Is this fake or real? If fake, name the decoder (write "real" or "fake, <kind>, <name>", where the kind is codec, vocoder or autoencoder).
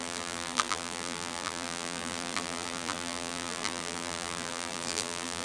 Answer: fake, vocoder, BigVGAN v2